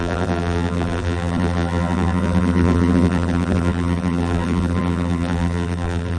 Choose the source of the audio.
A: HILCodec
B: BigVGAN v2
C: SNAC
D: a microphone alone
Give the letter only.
B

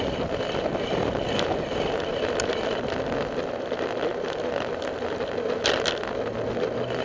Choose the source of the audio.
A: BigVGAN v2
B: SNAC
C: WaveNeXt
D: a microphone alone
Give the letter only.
D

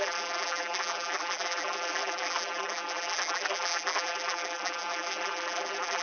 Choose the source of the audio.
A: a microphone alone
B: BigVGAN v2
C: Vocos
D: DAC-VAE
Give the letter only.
B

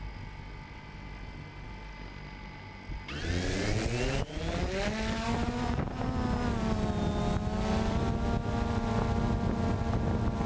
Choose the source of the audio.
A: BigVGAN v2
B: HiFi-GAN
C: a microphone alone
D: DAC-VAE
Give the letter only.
C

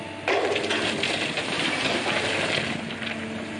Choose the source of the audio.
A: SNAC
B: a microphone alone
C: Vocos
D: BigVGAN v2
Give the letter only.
B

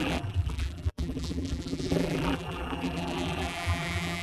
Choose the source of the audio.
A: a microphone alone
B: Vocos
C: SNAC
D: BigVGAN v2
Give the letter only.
D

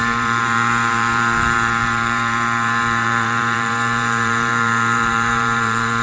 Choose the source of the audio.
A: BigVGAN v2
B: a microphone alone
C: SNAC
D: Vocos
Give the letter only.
A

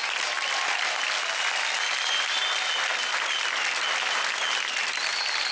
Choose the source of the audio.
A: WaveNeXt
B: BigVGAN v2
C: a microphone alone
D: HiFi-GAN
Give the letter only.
C